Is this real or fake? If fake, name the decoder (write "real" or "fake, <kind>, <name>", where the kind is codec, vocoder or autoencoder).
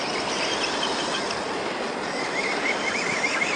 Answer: real